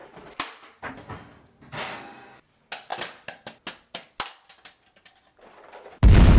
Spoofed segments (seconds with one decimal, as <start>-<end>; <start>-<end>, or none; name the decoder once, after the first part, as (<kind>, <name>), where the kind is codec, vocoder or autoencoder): none